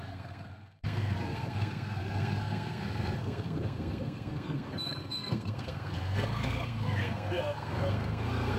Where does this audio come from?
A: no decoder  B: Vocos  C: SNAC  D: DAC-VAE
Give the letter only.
C